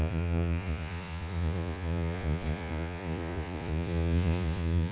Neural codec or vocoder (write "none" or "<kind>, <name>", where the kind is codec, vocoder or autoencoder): vocoder, Vocos